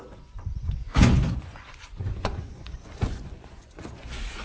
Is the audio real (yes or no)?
no